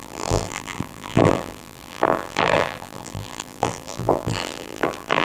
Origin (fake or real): fake